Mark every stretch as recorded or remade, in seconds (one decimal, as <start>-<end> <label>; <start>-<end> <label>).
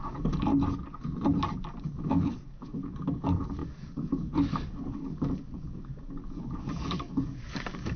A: 0.0-0.5 remade; 0.5-1.8 recorded; 1.8-8.0 remade